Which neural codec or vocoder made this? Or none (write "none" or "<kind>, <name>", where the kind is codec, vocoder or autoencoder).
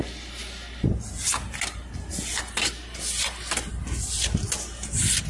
none